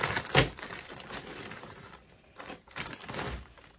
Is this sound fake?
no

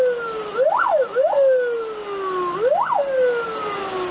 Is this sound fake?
no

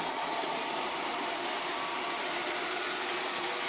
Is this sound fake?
no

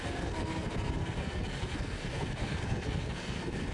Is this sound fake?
yes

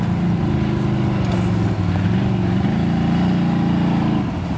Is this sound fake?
no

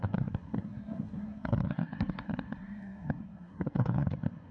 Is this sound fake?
yes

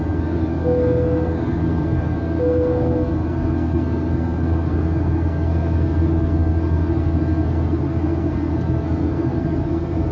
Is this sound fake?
yes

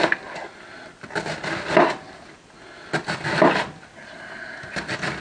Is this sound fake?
no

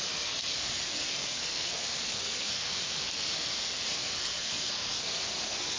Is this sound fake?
yes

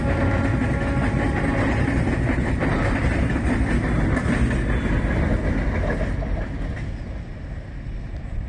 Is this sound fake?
no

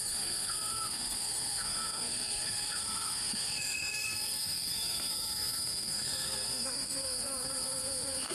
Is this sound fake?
yes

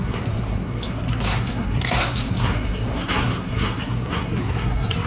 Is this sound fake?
yes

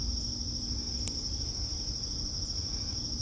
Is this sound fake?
no